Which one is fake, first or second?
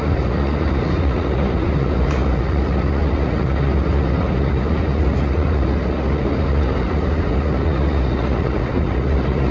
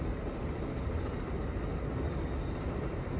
first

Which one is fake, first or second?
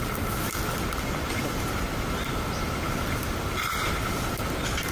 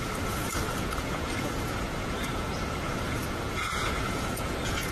second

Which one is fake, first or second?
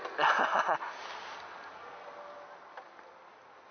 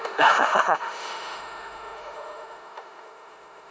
second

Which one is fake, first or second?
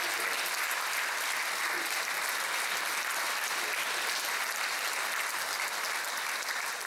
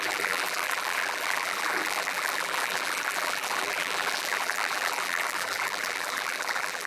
second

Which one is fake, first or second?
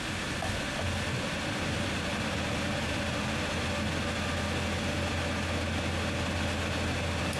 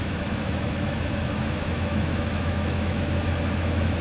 second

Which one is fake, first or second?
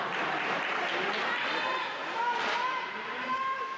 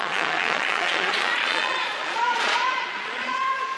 second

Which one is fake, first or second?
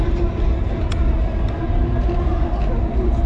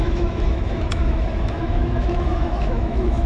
second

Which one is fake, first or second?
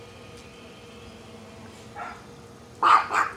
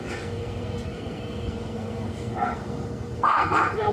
second